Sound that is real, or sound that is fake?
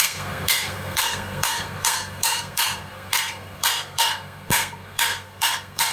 fake